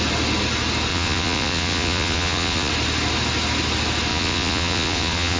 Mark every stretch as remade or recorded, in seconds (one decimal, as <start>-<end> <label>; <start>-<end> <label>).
0.0-0.9 recorded; 0.9-2.7 remade; 2.7-4.1 recorded; 4.1-5.4 remade